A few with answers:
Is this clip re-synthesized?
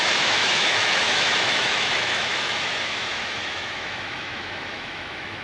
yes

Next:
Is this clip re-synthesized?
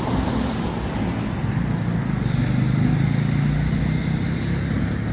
no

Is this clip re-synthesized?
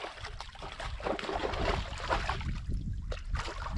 no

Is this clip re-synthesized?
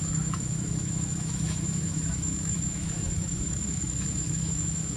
yes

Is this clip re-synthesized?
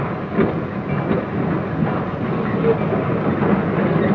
no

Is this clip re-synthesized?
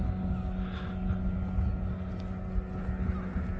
no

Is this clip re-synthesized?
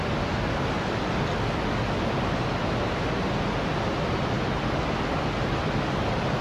no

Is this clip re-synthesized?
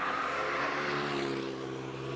no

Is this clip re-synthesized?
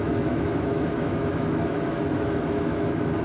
yes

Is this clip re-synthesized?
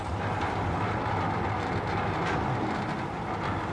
no